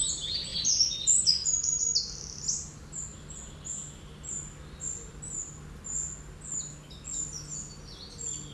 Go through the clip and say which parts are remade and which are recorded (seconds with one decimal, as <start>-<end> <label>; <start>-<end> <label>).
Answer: 0.0-0.5 recorded; 0.5-1.8 remade; 1.8-8.5 recorded